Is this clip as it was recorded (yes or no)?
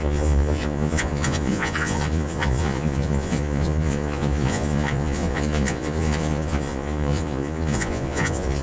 no